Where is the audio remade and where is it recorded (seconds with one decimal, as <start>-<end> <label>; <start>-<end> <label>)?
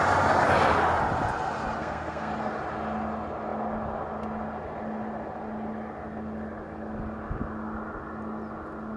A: 0.0-1.8 recorded; 1.8-2.3 remade; 2.3-9.0 recorded